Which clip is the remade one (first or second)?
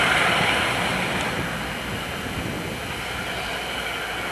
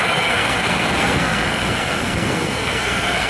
second